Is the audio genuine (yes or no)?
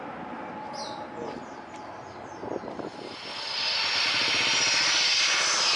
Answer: yes